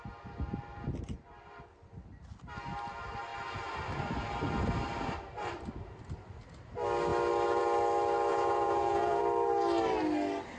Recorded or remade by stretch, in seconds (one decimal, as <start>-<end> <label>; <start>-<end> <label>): 0.0-8.3 recorded; 8.3-9.2 remade; 9.2-10.6 recorded